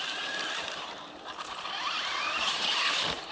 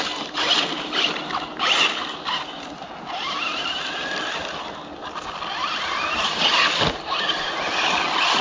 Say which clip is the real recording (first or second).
second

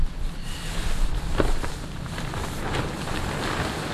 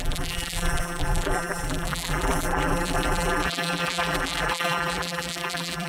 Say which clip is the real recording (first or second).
first